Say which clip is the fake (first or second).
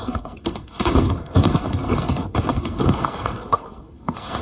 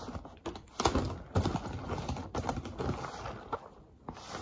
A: first